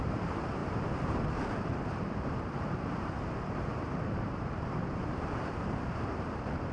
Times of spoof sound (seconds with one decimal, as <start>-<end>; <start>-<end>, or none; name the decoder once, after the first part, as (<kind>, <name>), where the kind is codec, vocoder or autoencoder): 0.0-6.7 (vocoder, BigVGAN v2)